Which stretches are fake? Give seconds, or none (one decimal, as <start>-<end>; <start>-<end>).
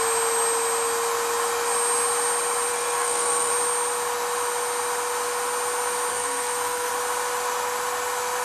2.7-3.5; 6.1-6.9